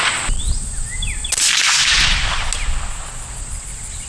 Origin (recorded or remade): recorded